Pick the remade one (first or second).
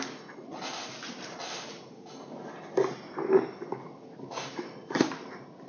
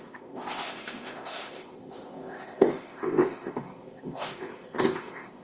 second